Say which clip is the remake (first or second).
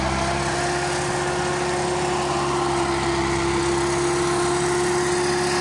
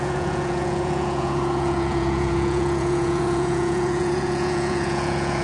second